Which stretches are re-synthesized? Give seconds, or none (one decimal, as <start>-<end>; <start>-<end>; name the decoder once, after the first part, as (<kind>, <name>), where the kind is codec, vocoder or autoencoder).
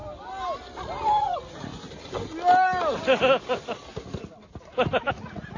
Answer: 1.2-1.7 (vocoder, Vocos); 5.1-5.6